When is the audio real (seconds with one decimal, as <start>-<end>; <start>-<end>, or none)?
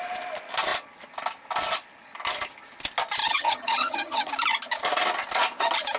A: 0.0-3.2; 4.3-6.0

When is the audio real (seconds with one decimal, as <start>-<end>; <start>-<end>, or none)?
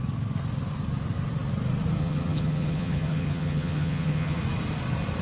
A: 0.0-2.0; 4.4-5.2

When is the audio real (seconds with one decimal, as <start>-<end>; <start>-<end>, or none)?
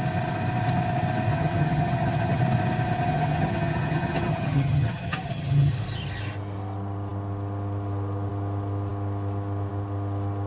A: 0.0-1.3; 2.4-3.0; 5.7-10.5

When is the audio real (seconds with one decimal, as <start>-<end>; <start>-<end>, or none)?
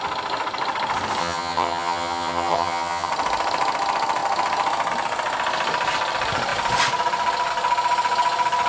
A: 0.0-1.2; 3.1-8.7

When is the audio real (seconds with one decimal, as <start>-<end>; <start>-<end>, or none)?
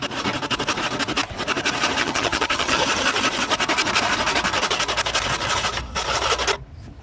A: 0.0-2.0; 2.8-7.0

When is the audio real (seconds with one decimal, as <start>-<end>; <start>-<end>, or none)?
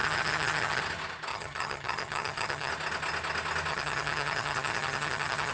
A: 0.8-1.3; 2.7-3.7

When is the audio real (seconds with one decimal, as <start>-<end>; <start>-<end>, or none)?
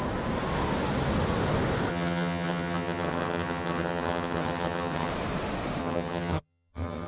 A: 0.0-1.9; 5.1-5.8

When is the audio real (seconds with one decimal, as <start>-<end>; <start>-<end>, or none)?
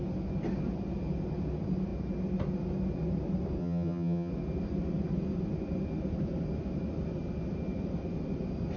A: 0.0-3.6; 4.3-8.8